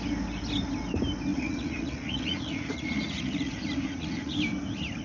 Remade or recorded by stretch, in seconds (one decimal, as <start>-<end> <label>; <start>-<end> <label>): 0.0-1.3 recorded; 1.3-4.3 remade; 4.3-5.0 recorded